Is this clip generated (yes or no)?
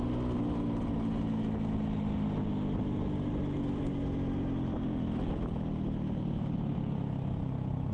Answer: no